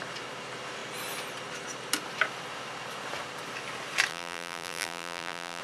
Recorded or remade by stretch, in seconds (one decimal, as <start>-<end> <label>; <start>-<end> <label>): 0.0-4.1 recorded; 4.1-5.6 remade